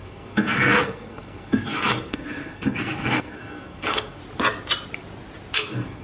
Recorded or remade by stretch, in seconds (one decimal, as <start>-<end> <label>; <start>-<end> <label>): 0.0-4.2 remade; 4.2-5.5 recorded; 5.5-6.0 remade

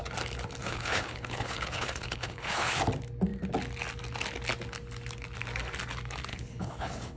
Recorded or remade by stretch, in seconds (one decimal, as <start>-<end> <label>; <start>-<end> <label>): 0.0-0.6 recorded; 0.6-2.8 remade; 2.8-6.3 recorded; 6.3-7.2 remade

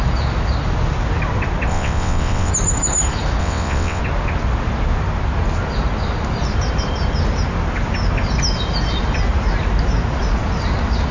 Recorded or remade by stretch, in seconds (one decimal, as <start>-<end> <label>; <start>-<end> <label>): 0.0-1.7 recorded; 1.7-2.5 remade; 2.5-3.4 recorded; 3.4-4.0 remade; 4.0-11.1 recorded

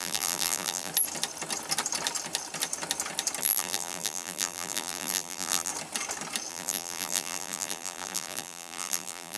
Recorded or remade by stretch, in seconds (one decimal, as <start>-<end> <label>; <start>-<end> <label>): 0.0-0.9 remade; 0.9-3.4 recorded; 3.4-5.7 remade; 5.7-6.5 recorded; 6.5-9.4 remade

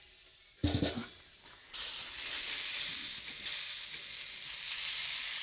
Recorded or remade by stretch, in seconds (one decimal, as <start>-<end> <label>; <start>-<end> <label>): 0.0-5.4 recorded